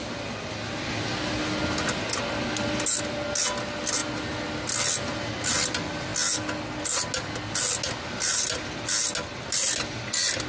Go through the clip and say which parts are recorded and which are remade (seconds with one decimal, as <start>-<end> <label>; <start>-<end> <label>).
0.0-10.5 recorded